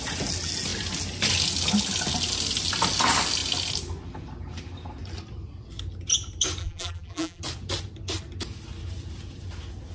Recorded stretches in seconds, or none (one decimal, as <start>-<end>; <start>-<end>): 0.0-6.6; 7.4-9.9